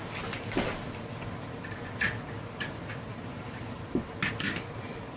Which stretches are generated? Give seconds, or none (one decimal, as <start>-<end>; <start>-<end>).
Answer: 3.1-4.1